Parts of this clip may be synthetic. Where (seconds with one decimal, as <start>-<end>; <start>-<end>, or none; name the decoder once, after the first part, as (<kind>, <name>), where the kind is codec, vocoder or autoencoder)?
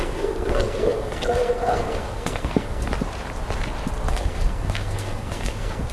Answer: 0.0-2.9 (codec, SNAC); 4.1-5.9